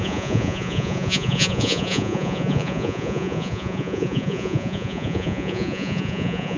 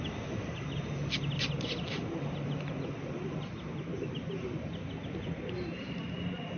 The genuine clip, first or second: second